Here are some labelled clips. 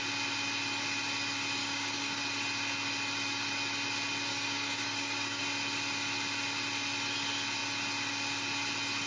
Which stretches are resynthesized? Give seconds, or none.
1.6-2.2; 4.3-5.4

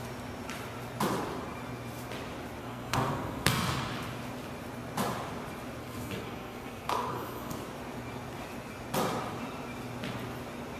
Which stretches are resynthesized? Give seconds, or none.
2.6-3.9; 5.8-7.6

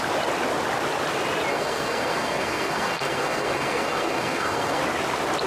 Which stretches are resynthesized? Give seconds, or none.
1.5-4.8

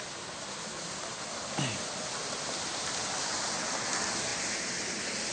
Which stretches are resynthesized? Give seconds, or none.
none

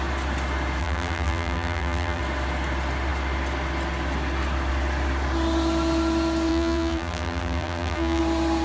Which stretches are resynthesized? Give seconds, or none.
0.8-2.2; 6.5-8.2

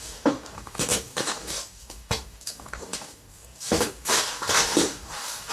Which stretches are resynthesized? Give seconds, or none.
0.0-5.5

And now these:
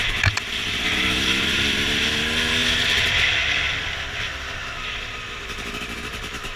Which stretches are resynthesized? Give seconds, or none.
none